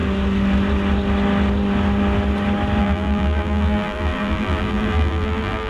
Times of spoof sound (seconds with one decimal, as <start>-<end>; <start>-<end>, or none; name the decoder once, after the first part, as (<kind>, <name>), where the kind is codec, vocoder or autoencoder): 2.8-5.7 (vocoder, BigVGAN v2)